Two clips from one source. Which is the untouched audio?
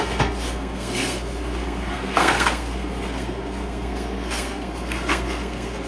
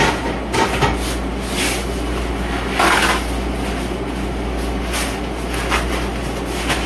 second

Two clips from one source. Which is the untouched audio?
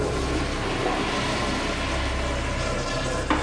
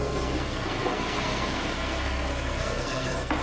first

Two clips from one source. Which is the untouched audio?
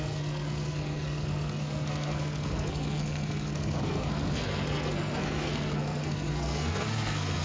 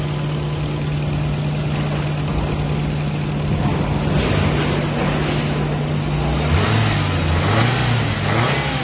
second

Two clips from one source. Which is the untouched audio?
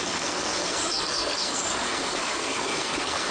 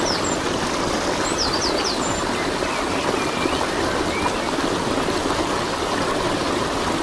second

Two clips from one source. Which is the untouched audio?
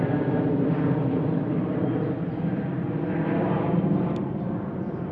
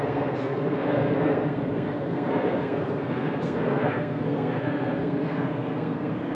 first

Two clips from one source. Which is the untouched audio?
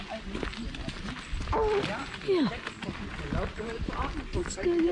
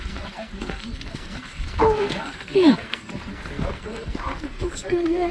first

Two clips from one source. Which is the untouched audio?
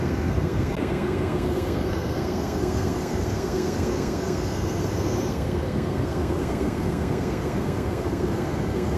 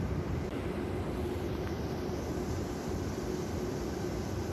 second